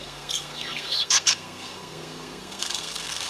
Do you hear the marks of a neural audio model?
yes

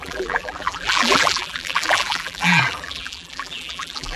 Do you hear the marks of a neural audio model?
yes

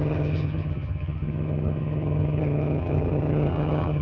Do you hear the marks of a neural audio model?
yes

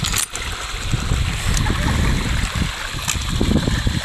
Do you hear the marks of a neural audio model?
no